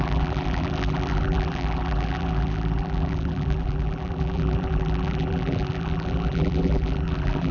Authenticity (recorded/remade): remade